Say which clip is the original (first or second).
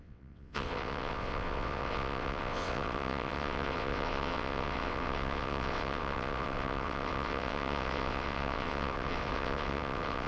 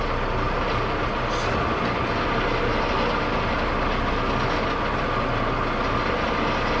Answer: second